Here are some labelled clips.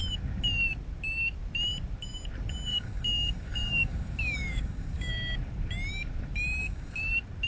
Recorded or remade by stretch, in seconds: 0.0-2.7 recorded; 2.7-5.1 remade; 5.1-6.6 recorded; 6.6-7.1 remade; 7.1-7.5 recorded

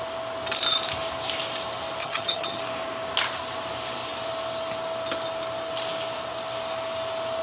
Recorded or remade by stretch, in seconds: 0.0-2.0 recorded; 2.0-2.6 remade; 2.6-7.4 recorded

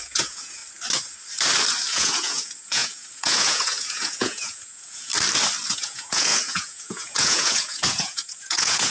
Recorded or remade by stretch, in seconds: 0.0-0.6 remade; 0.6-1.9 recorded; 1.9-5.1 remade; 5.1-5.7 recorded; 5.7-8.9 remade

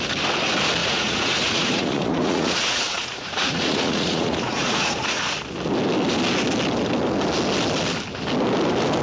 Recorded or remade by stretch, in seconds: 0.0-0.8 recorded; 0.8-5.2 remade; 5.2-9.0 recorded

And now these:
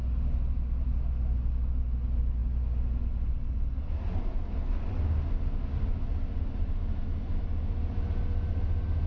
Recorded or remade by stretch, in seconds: 0.0-9.1 recorded

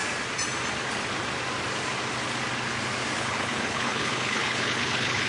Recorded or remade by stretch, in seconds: 0.0-3.2 recorded; 3.2-5.3 remade